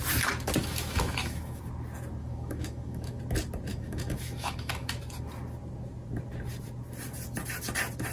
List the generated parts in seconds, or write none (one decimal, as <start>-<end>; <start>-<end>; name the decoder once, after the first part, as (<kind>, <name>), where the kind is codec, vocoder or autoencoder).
0.6-1.6 (autoencoder, DAC-VAE); 2.2-3.2; 3.7-5.0